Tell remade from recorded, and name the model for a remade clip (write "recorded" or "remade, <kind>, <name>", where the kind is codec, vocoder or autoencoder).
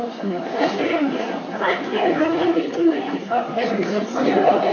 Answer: remade, codec, SNAC